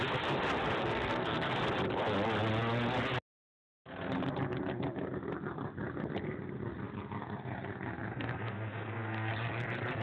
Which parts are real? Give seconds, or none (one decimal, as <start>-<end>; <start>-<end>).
0.0-0.8; 1.5-8.1; 9.3-10.0